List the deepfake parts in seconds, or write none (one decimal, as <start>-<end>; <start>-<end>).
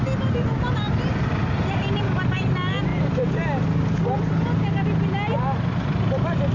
none